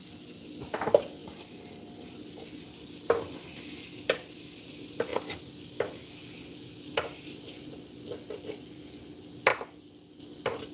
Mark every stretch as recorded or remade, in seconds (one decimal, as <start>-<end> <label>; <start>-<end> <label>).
0.0-10.7 recorded